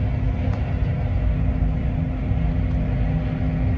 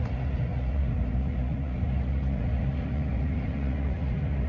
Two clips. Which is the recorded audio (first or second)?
first